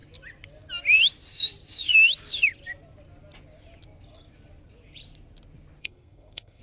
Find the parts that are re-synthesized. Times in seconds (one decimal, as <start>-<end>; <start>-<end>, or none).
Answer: 5.8-6.6